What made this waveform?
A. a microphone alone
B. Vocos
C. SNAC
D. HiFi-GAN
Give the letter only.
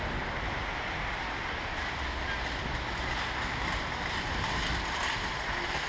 A